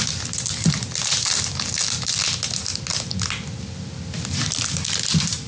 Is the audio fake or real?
real